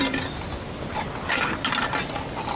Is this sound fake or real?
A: real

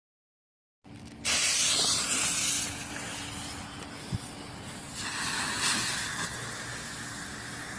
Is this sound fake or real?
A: real